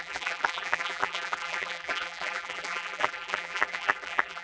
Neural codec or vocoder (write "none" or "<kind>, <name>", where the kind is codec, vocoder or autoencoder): vocoder, BigVGAN v2